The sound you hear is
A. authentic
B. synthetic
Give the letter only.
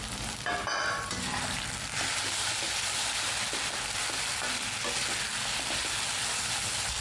A